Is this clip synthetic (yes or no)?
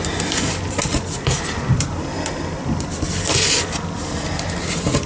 no